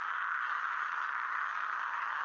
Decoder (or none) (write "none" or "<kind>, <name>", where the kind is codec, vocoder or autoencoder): none